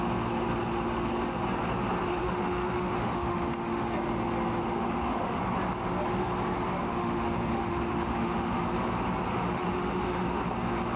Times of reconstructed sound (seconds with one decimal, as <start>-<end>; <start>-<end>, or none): 2.1-3.9; 4.6-5.4; 6.8-8.6; 9.3-10.4